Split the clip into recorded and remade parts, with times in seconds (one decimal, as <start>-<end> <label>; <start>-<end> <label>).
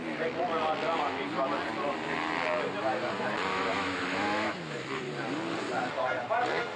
0.0-3.5 recorded; 3.5-4.5 remade; 4.5-6.8 recorded